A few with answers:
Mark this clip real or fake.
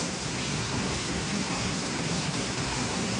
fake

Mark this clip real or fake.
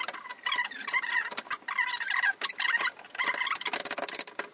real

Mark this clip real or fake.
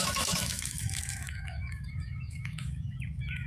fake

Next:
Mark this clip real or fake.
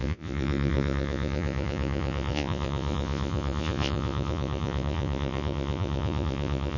fake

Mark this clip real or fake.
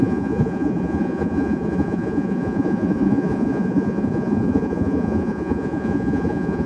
fake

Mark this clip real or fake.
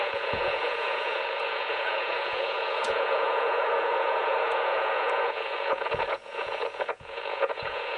fake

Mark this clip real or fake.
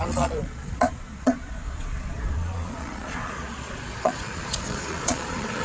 fake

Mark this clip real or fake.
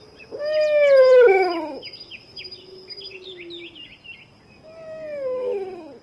real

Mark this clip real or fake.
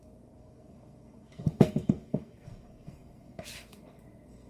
fake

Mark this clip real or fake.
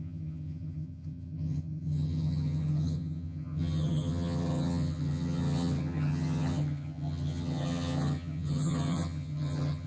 fake